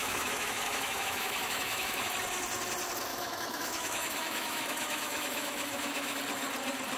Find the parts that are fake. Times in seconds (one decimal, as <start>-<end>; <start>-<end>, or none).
0.0-2.1; 3.1-6.2

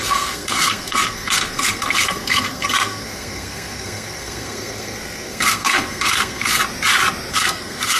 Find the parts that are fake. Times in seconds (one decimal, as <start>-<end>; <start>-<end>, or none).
0.0-6.6; 7.3-8.0

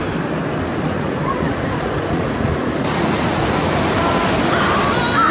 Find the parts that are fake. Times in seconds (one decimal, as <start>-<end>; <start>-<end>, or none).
0.7-3.9

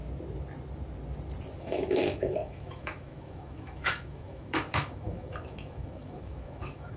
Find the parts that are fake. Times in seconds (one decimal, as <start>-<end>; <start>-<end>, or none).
1.6-7.0

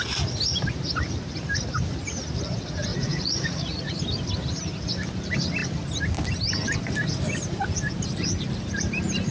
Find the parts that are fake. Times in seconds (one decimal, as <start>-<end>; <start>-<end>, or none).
2.9-4.0